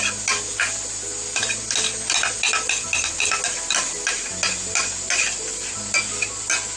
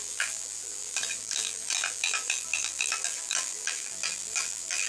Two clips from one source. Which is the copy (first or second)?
second